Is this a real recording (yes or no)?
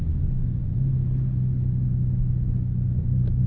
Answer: yes